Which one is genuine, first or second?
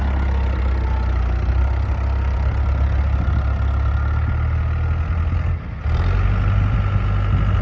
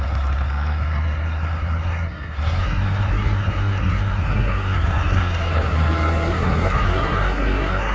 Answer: first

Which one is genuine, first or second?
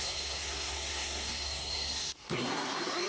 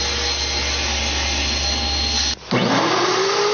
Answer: second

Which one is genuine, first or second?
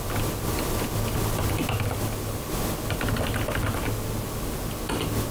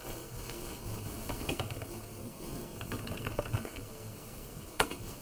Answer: first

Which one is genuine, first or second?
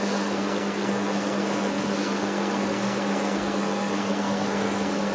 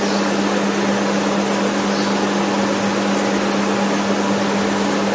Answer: second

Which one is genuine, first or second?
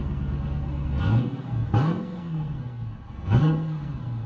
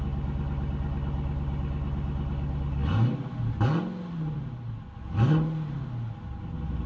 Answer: second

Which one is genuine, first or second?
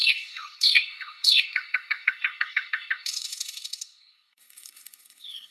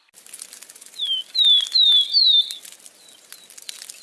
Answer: second